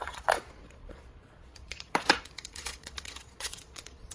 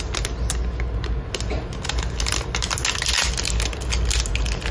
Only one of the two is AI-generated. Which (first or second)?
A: first